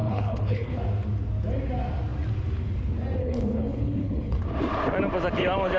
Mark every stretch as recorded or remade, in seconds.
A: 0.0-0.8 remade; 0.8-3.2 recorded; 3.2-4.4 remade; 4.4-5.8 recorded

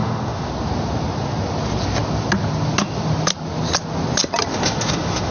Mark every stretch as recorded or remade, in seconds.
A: 0.0-0.5 remade; 0.5-4.5 recorded; 4.5-5.3 remade

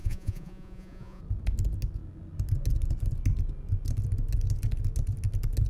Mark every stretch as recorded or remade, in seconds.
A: 0.0-1.2 remade; 1.2-5.7 recorded

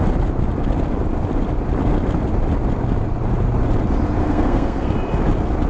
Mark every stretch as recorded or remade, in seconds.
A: 0.0-4.2 recorded; 4.2-4.9 remade; 4.9-5.7 recorded

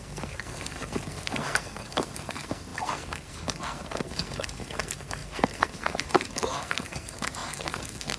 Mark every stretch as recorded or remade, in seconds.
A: 0.0-8.2 remade

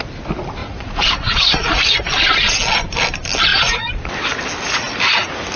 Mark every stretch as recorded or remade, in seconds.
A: 0.0-0.6 recorded; 0.6-2.0 remade; 2.0-3.5 recorded; 3.5-4.0 remade; 4.0-5.6 recorded

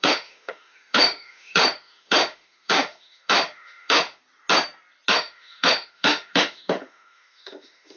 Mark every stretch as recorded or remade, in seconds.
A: 0.0-4.2 remade; 4.2-5.1 recorded; 5.1-8.0 remade